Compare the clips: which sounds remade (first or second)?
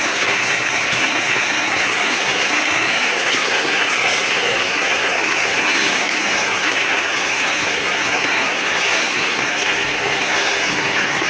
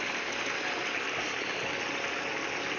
first